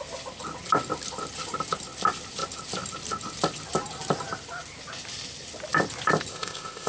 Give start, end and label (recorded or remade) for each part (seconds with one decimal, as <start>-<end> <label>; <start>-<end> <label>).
0.0-6.3 recorded; 6.3-6.9 remade